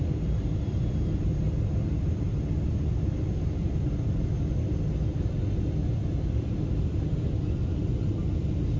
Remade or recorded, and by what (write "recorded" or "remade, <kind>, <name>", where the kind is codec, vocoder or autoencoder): recorded